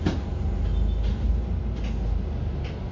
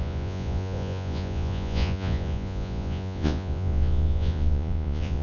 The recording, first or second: first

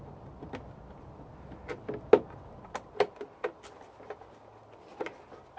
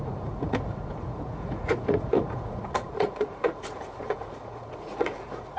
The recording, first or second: first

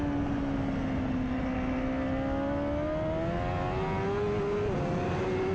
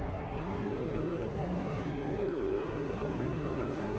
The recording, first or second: first